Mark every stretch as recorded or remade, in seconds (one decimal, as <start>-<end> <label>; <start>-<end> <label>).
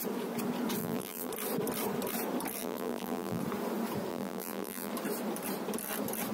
0.0-0.8 recorded; 0.8-1.3 remade; 1.3-2.6 recorded; 2.6-3.4 remade; 3.4-4.1 recorded; 4.1-4.9 remade; 4.9-6.3 recorded